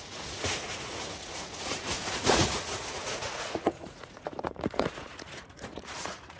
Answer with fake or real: fake